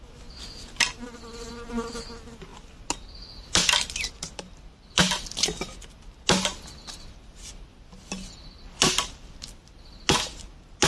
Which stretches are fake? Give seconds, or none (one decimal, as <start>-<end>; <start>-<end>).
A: none